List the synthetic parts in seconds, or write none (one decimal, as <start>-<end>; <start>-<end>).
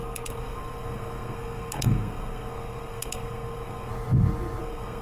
0.0-3.9; 4.6-5.0